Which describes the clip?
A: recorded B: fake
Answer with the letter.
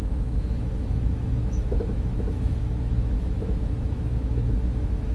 B